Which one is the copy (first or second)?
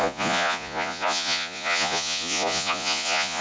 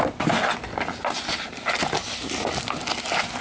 first